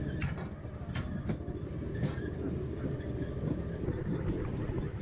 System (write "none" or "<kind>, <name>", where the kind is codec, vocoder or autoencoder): none